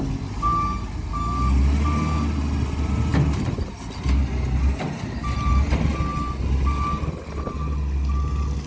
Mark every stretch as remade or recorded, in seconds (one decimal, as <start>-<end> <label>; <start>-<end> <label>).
0.0-8.7 recorded